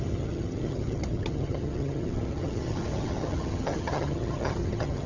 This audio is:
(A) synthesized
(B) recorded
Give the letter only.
A